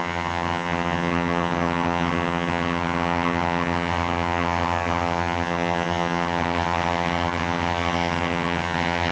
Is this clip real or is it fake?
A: fake